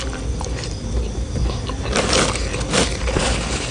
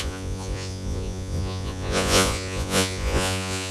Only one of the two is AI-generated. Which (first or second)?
second